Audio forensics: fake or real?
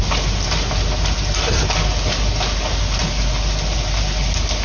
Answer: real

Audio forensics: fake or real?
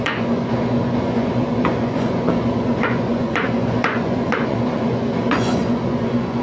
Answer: fake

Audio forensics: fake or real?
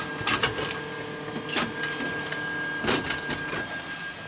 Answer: real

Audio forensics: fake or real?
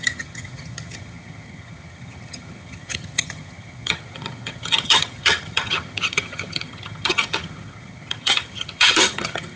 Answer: fake